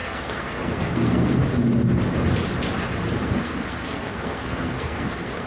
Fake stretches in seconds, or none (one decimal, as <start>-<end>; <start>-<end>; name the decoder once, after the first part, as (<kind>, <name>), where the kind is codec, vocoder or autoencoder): 0.0-1.4 (codec, SNAC); 3.2-5.5